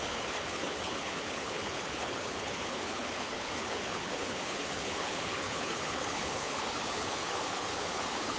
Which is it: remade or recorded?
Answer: remade